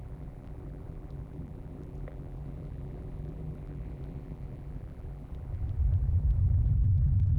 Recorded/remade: remade